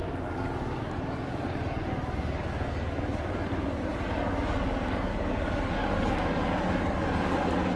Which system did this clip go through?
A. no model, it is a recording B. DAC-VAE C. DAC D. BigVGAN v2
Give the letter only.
C